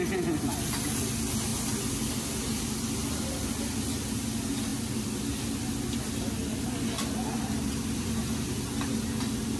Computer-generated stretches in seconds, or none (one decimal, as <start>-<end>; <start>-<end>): none